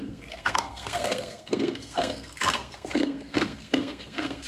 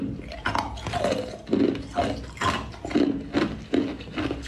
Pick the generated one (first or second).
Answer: first